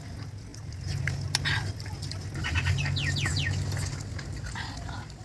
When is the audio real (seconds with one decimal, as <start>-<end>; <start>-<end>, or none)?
0.0-5.2